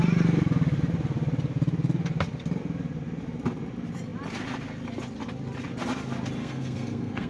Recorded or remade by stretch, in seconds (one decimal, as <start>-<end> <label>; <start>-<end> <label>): 0.0-6.4 recorded; 6.4-7.3 remade